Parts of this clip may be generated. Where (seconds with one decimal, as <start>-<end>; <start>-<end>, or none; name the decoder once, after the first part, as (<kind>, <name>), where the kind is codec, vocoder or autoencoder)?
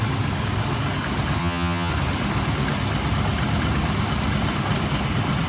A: 1.4-1.9 (vocoder, HiFi-GAN)